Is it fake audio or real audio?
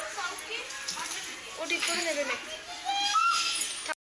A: real